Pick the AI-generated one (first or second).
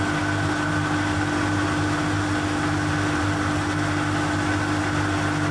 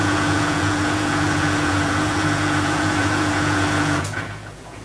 second